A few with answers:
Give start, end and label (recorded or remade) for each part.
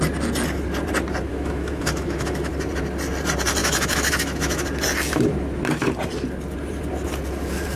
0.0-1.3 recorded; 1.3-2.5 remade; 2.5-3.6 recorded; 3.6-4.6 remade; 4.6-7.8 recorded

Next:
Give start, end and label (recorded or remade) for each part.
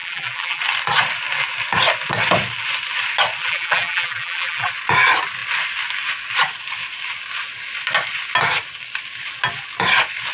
0.0-0.6 remade; 0.6-3.4 recorded; 3.4-4.7 remade; 4.7-10.3 recorded